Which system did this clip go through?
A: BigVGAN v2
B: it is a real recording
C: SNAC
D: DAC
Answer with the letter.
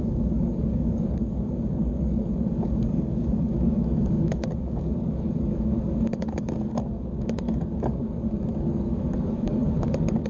D